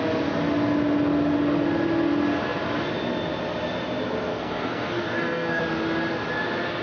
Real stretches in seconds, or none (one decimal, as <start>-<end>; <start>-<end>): 0.0-4.3; 5.6-6.8

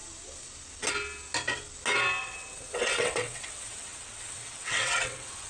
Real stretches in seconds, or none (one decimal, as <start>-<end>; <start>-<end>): 0.0-2.2